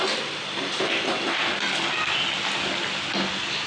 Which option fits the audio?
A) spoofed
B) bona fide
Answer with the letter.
B